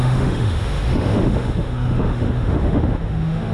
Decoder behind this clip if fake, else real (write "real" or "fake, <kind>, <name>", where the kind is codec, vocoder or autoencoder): fake, autoencoder, DAC-VAE